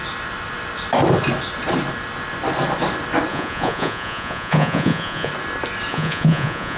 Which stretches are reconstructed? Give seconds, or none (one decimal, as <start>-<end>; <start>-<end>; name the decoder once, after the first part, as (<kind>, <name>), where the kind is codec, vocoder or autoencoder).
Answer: 3.3-5.3 (vocoder, Vocos); 5.9-6.8